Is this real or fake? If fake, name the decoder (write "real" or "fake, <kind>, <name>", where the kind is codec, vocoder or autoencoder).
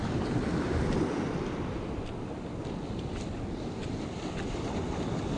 fake, vocoder, BigVGAN v2